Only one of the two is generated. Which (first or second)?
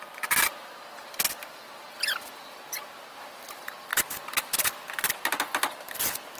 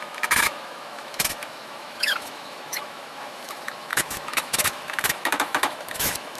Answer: second